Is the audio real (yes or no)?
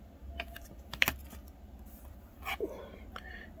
yes